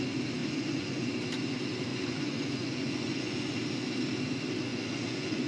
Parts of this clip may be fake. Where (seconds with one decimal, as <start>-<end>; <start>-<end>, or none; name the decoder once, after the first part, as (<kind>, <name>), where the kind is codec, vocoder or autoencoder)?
0.4-1.1 (vocoder, Vocos); 1.9-3.5; 4.7-5.5